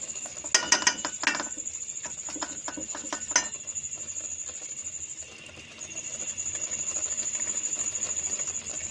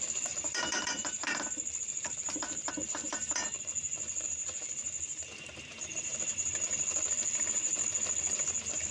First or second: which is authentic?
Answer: first